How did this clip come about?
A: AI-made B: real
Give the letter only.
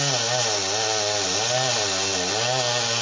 B